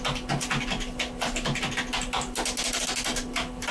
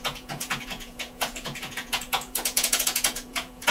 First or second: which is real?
first